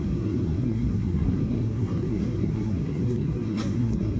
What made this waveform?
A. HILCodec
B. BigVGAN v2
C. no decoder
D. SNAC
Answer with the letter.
D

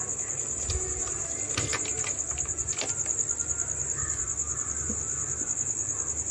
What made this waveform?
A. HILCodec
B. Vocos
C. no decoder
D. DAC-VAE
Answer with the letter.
C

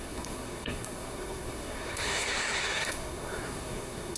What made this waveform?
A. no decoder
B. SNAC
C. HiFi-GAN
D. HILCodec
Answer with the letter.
B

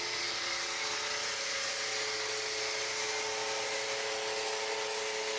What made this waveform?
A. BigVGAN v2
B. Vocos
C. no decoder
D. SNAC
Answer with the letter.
C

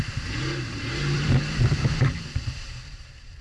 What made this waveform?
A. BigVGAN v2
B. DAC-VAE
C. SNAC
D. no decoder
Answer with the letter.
A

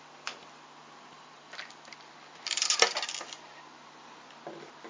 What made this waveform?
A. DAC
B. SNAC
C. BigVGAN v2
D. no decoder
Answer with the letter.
D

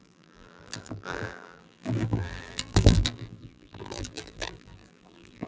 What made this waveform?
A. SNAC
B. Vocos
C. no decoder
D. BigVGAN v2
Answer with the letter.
D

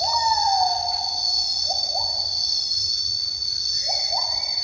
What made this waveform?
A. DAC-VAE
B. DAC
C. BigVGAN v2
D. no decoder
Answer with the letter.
D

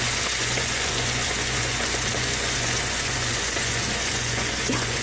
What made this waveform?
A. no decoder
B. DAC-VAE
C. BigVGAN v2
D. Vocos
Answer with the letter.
D